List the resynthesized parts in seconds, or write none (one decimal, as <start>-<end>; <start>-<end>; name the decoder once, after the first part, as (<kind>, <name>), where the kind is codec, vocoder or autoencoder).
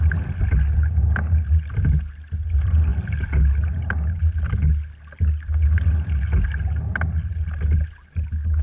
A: none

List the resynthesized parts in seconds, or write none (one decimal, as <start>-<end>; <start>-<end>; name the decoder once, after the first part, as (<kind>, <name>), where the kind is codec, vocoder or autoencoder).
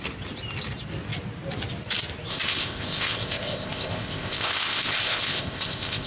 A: 2.3-6.1 (codec, ZipCodec)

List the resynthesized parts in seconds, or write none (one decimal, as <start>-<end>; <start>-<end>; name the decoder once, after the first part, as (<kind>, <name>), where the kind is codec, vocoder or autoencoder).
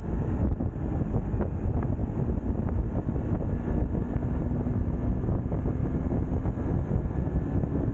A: none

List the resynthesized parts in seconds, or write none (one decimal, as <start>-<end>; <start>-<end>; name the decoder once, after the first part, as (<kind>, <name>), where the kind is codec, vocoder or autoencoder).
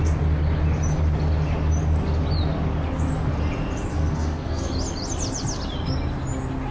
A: 3.9-4.7 (codec, SNAC)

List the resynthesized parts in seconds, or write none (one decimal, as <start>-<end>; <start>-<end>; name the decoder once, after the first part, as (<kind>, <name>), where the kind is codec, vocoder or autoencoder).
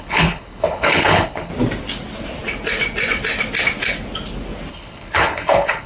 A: 0.0-1.5 (codec, HILCodec); 4.7-5.9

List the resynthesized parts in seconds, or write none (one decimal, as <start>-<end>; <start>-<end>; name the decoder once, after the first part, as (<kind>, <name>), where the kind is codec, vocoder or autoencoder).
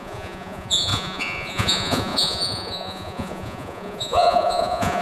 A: 0.0-5.0 (vocoder, Vocos)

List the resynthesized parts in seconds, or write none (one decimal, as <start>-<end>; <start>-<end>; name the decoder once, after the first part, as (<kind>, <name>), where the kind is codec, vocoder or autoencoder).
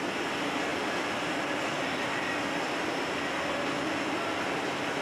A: none